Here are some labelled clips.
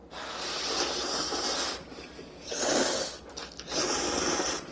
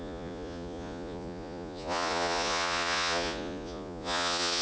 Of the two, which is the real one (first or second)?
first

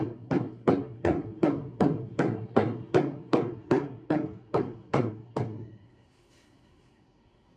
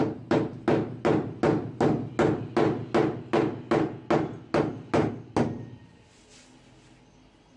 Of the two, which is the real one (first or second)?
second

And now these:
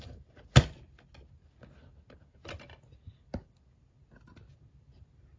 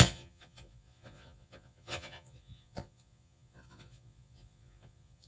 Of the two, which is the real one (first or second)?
first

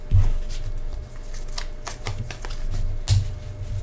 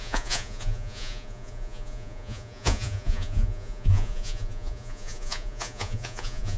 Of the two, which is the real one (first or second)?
first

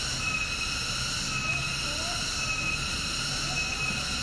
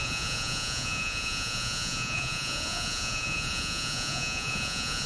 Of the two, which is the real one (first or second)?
first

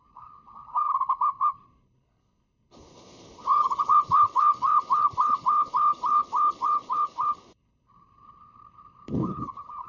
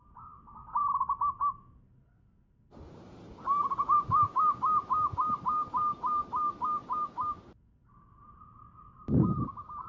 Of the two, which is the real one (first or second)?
second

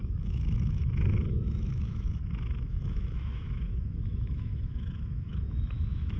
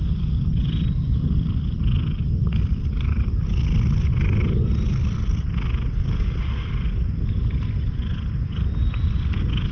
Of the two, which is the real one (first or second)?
second